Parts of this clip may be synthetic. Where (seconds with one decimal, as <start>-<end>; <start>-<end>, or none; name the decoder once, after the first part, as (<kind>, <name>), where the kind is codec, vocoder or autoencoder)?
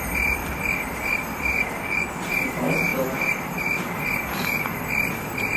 0.4-1.2 (vocoder, BigVGAN v2); 2.9-3.5; 4.7-5.6